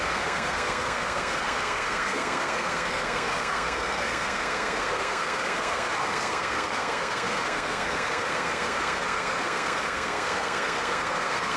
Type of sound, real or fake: fake